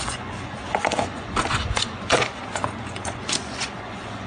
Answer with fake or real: fake